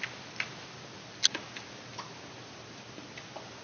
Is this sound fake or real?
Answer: real